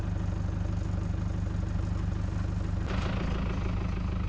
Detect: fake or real real